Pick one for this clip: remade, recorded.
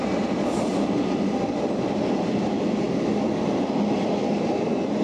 recorded